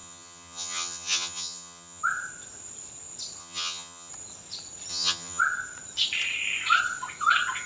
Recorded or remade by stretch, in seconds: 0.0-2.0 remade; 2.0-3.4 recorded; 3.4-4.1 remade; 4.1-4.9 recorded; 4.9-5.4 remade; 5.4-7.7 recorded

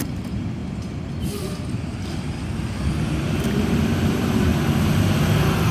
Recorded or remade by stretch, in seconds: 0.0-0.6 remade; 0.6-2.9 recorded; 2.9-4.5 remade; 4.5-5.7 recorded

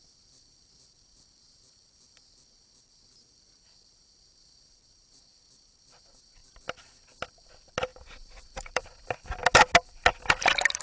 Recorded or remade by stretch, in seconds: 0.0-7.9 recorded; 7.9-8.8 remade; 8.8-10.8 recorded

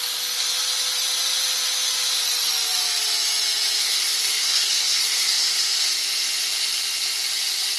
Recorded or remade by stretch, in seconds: 0.0-3.8 recorded; 3.8-5.8 remade; 5.8-7.8 recorded